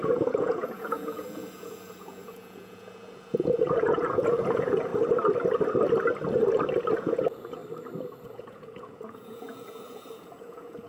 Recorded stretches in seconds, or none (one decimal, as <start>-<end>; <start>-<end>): 4.9-7.0; 7.6-8.3